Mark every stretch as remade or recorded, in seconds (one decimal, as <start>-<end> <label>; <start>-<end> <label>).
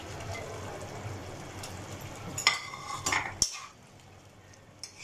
0.0-5.0 recorded